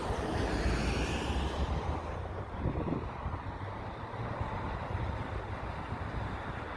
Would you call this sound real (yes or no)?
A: yes